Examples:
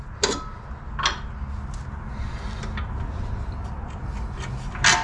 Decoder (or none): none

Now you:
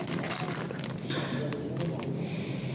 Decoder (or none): none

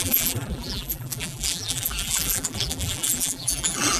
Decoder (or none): vocoder, BigVGAN v2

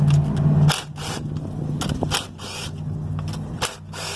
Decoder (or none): none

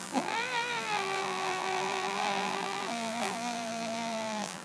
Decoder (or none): vocoder, BigVGAN v2